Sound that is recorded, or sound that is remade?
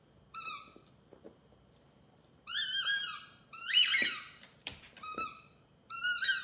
remade